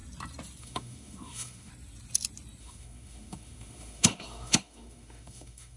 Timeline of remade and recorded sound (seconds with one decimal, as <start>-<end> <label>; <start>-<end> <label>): 0.0-0.6 recorded; 0.6-1.7 remade; 1.7-2.6 recorded; 2.6-5.8 remade